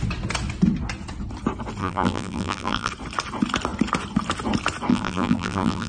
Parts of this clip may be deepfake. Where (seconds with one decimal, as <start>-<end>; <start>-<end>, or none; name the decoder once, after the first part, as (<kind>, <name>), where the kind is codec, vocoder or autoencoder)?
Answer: 1.8-2.9 (vocoder, BigVGAN v2); 4.9-5.9